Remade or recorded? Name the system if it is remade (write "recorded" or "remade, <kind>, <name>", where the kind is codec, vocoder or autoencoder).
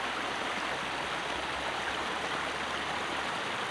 recorded